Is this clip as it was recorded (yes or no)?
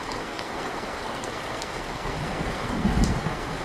no